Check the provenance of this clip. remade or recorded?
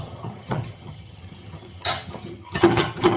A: remade